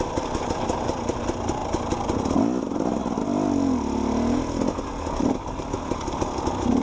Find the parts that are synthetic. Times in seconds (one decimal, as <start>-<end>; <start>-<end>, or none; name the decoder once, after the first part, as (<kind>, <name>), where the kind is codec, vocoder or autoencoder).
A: none